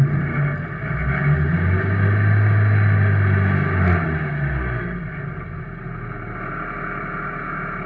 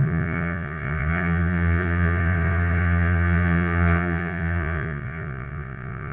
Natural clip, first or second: first